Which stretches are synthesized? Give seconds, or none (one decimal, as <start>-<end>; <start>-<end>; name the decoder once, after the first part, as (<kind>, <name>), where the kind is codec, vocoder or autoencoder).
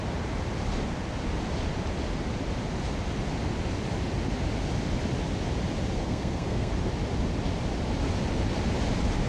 6.0-6.7 (codec, SNAC)